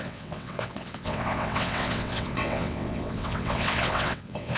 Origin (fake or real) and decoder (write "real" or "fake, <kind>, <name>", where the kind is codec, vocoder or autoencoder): fake, vocoder, WaveNeXt